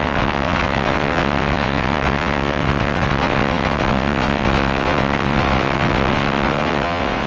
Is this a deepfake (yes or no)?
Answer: yes